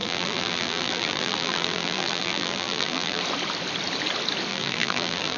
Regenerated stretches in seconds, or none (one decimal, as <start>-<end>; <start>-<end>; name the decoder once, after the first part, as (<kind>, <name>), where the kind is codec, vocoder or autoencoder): 0.0-3.2 (vocoder, BigVGAN v2); 4.5-5.4